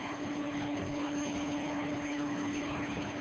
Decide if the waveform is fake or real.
fake